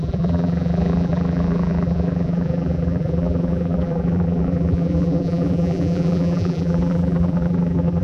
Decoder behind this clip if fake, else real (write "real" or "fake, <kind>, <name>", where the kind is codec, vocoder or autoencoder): fake, vocoder, BigVGAN v2